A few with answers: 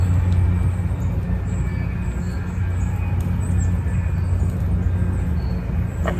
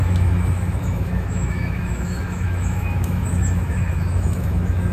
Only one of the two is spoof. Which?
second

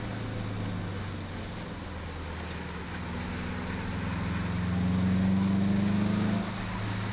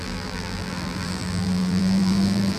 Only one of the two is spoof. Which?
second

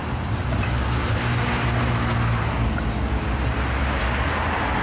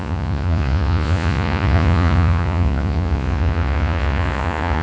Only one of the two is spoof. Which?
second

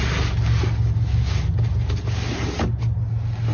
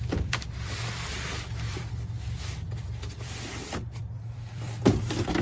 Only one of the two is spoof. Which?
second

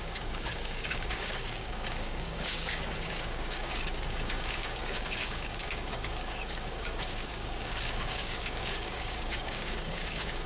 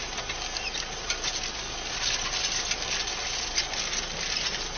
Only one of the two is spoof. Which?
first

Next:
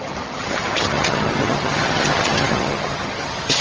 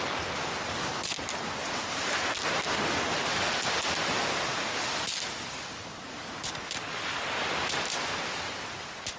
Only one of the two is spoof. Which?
first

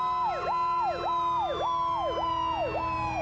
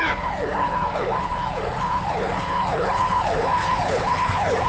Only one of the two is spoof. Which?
second